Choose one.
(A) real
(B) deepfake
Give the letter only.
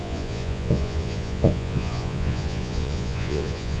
B